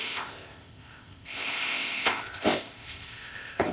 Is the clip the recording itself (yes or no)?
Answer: no